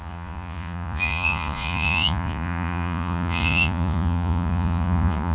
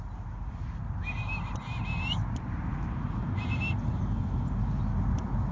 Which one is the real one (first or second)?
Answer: second